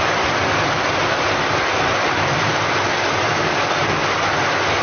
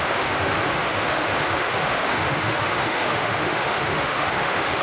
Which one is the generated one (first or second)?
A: second